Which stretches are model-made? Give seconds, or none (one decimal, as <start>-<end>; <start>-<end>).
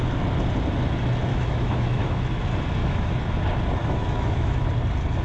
1.3-2.4; 2.8-3.3; 3.8-4.7